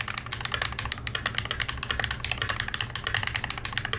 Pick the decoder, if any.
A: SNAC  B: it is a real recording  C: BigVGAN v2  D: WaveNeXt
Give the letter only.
B